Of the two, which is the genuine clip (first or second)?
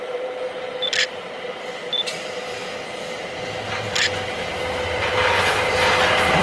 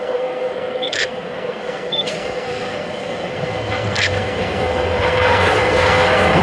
first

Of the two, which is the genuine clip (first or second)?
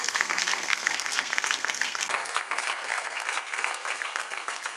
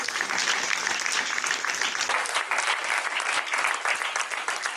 second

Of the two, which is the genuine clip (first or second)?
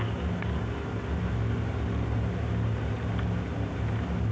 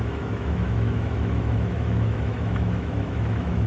first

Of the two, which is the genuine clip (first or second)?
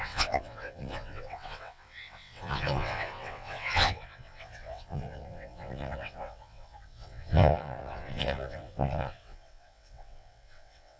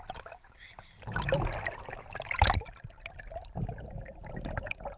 second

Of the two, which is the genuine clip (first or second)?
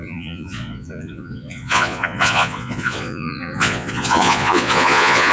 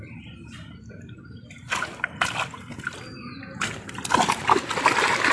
second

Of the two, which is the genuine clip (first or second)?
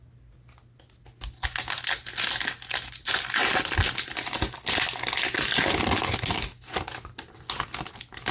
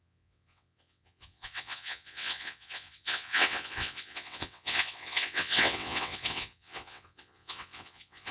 first